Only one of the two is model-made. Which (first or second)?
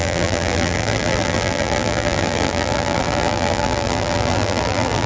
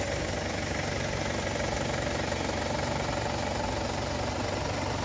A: first